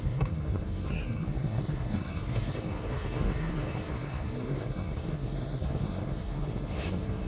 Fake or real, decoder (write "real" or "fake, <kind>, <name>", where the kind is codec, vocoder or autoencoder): fake, codec, SNAC